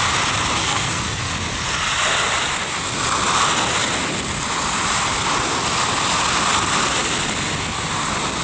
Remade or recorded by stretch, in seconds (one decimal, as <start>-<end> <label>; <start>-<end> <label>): 0.0-0.6 recorded; 0.6-1.3 remade; 1.3-8.4 recorded

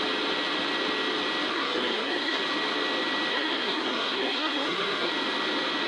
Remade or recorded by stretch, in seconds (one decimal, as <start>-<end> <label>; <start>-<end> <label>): 0.0-1.5 recorded; 1.5-2.4 remade; 2.4-3.3 recorded; 3.3-5.1 remade; 5.1-5.9 recorded

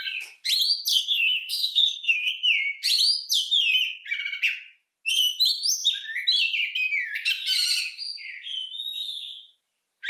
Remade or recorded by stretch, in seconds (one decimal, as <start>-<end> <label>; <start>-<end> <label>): 0.0-0.9 recorded; 0.9-2.3 remade; 2.3-10.1 recorded